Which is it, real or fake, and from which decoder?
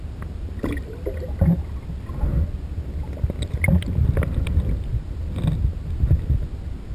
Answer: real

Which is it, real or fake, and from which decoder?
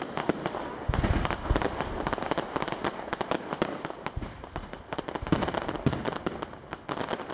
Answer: real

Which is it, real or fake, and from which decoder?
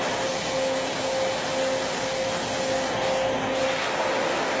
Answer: real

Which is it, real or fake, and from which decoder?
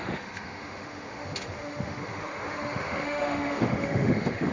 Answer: fake, autoencoder, DAC-VAE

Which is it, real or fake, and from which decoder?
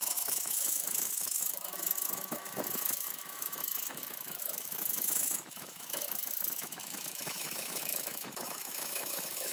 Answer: fake, autoencoder, DAC-VAE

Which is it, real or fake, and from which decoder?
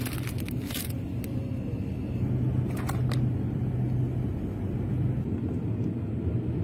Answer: real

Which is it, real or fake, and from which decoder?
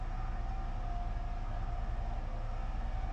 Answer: real